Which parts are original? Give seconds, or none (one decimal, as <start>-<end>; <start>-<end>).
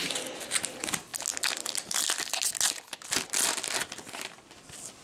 0.0-5.0